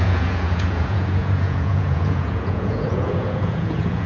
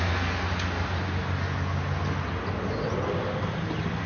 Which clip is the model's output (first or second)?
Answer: first